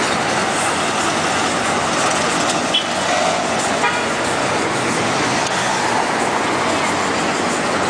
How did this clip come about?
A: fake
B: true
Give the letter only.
A